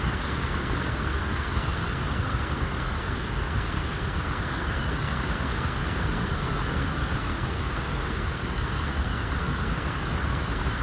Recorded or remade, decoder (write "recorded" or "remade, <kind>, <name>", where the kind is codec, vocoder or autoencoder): remade, codec, SNAC